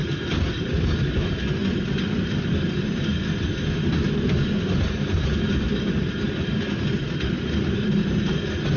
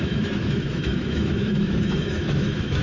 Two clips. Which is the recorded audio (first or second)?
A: first